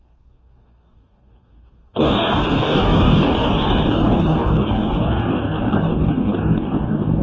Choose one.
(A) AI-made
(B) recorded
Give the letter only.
A